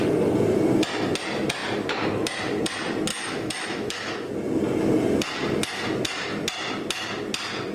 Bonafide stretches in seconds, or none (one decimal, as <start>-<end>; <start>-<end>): 0.0-3.1; 4.3-7.7